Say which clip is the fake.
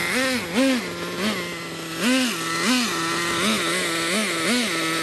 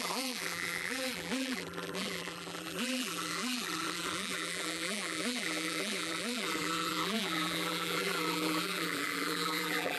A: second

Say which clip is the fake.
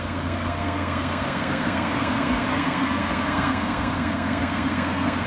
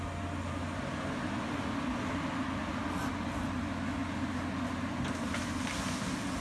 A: first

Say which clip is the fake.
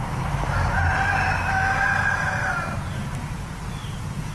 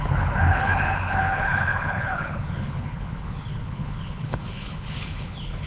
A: second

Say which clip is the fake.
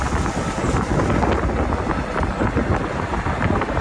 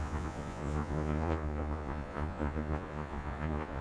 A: second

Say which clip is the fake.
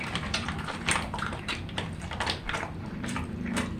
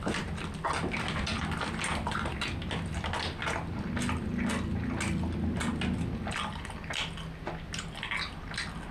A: first